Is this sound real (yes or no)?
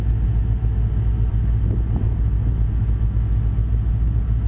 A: yes